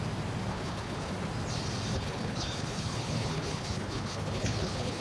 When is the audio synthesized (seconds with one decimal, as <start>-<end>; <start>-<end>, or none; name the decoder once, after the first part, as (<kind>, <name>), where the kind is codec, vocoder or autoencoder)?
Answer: 0.5-1.1 (codec, HILCodec); 1.9-5.0